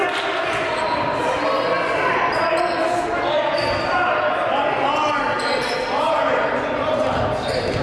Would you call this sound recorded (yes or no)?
yes